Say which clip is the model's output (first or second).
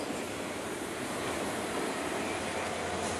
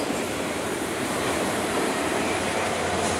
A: second